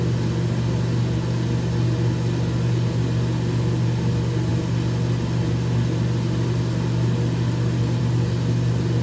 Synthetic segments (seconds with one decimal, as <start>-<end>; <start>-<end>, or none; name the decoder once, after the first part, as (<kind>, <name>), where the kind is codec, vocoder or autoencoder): none